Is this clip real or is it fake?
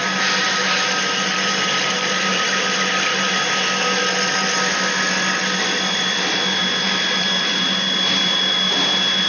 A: real